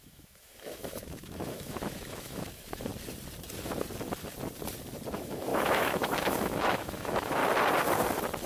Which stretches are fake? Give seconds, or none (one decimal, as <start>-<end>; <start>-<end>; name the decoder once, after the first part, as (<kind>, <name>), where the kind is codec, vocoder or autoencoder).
0.0-2.9 (autoencoder, DAC-VAE); 5.1-7.4

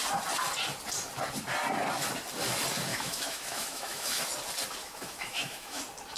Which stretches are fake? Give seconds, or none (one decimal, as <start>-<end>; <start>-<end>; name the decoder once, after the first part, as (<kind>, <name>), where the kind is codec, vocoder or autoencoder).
2.9-4.2 (autoencoder, DAC-VAE); 4.8-5.8

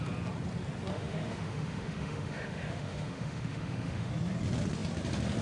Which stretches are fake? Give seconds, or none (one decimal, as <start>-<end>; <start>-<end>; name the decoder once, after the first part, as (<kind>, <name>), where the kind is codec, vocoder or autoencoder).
0.9-4.1 (autoencoder, DAC-VAE)

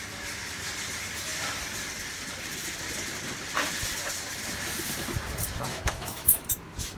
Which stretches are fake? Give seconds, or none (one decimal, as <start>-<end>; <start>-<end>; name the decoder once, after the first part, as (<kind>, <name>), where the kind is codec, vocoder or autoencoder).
5.7-7.0 (autoencoder, DAC-VAE)

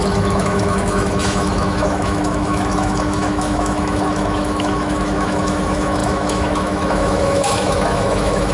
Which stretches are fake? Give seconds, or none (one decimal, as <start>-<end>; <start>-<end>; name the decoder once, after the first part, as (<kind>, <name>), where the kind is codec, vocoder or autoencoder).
0.0-8.5 (autoencoder, DAC-VAE)

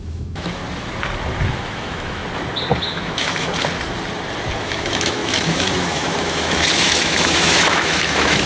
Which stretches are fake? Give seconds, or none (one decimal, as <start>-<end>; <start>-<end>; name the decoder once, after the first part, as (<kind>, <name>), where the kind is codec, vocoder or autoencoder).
0.0-0.6 (autoencoder, DAC-VAE); 1.5-2.2; 2.8-3.5; 4.6-8.5